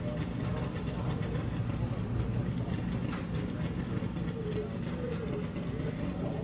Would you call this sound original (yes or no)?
yes